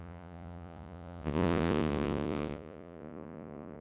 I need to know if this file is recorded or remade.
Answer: remade